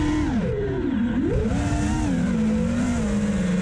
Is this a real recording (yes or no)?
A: yes